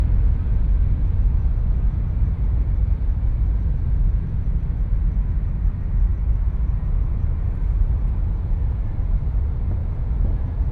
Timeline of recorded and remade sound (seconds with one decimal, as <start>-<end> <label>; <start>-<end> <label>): 0.0-4.5 remade; 4.5-6.1 recorded; 6.1-8.9 remade; 8.9-9.8 recorded; 9.8-10.7 remade